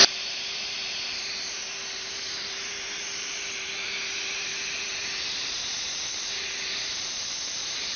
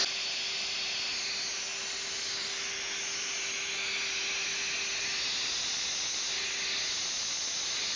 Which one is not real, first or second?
first